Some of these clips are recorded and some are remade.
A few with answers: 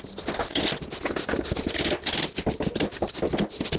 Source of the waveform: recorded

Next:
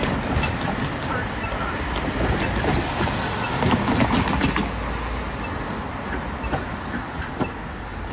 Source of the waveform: recorded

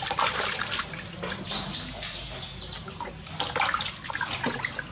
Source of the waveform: recorded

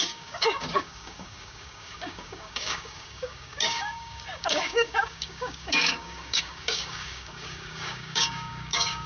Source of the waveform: remade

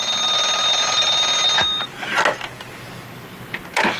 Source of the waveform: recorded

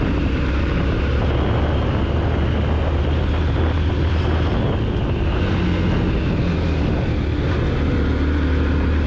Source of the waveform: recorded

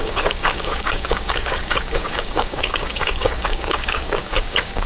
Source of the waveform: remade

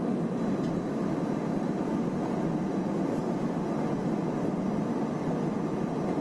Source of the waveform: recorded